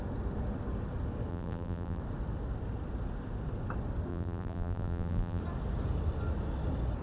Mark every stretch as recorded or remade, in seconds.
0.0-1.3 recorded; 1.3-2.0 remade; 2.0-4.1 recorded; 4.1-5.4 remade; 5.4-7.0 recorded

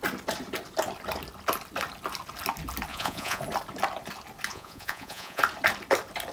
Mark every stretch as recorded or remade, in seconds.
0.0-2.9 recorded; 2.9-3.4 remade; 3.4-4.5 recorded; 4.5-5.4 remade; 5.4-6.3 recorded

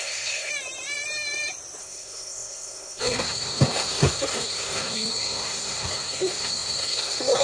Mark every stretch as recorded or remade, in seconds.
0.0-0.5 remade; 0.5-1.8 recorded; 1.8-7.4 remade

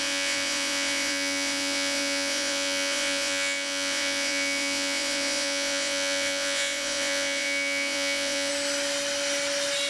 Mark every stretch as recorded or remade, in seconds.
0.0-8.5 remade; 8.5-9.9 recorded

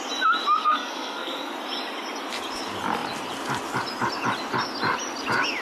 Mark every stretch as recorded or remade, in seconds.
0.0-0.6 recorded; 0.6-1.5 remade; 1.5-5.6 recorded

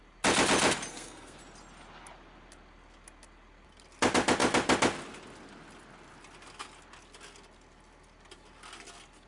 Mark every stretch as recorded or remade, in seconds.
0.0-0.9 recorded; 0.9-1.4 remade; 1.4-9.3 recorded